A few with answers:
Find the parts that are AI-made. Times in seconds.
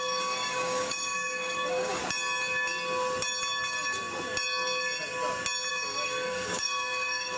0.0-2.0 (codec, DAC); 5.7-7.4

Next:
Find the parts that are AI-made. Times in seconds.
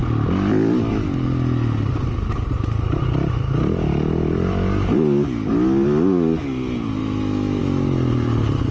7.0-7.6 (autoencoder, DAC-VAE)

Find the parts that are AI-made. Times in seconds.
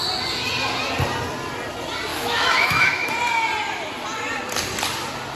2.1-3.1 (autoencoder, DAC-VAE)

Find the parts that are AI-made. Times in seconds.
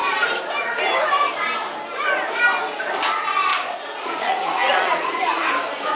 3.5-5.5 (vocoder, Vocos)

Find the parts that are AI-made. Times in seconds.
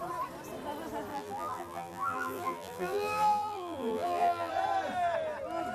1.1-4.5 (vocoder, BigVGAN v2)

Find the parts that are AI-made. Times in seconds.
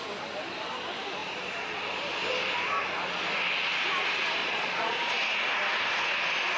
4.4-5.1 (vocoder, Vocos)